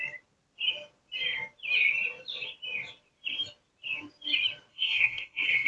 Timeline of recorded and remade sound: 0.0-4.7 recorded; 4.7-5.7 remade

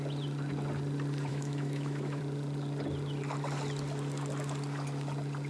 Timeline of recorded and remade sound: 0.0-1.3 recorded; 1.3-2.2 remade; 2.2-5.5 recorded

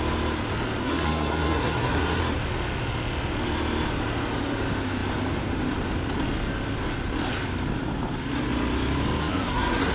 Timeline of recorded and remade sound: 0.0-0.8 recorded; 0.8-2.2 remade; 2.2-9.2 recorded; 9.2-9.9 remade

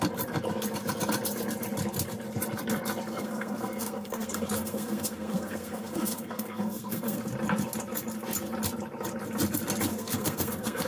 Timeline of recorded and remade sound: 0.0-3.1 recorded; 3.1-7.2 remade; 7.2-9.9 recorded; 9.9-10.9 remade

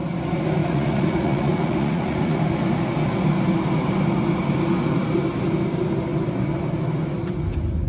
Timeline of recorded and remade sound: 0.0-0.6 recorded; 0.6-2.4 remade; 2.4-7.9 recorded